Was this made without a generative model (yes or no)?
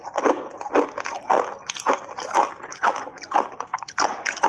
yes